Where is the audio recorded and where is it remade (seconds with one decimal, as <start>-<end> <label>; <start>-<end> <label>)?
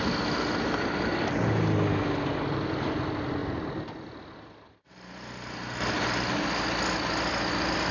0.0-7.9 recorded